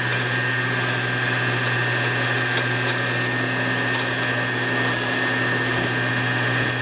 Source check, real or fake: real